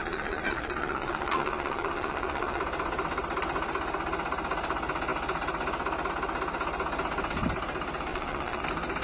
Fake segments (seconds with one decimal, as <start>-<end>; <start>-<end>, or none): 0.0-2.6; 8.1-8.6